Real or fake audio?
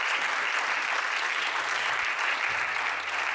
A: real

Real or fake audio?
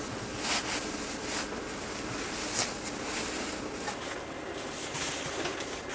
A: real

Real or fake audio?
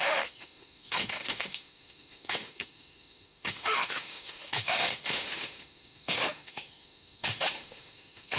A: fake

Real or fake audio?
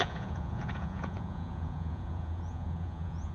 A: fake